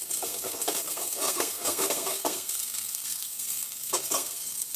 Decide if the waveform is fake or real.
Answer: fake